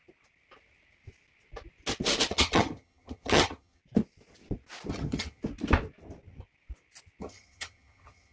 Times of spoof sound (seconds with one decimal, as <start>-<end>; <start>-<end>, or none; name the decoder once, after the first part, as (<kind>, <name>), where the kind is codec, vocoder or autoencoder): 2.3-3.8 (vocoder, HiFi-GAN); 4.9-5.4; 7.2-8.3